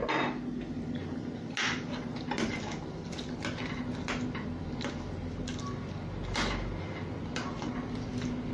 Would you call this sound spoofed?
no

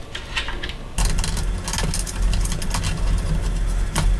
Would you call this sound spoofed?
no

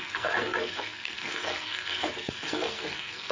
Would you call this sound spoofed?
yes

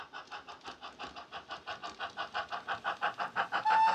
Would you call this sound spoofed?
no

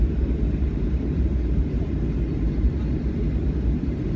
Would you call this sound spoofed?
yes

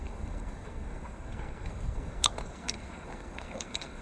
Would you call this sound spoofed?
yes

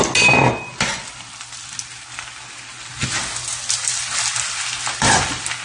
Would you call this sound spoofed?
no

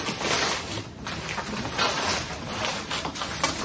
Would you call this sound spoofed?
no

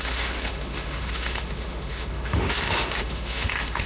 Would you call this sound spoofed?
yes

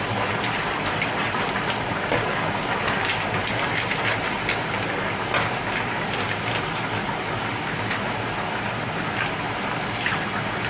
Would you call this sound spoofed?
no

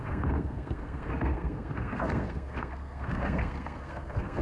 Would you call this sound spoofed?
yes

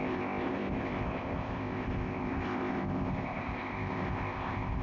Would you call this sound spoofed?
yes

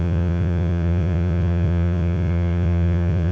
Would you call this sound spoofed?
yes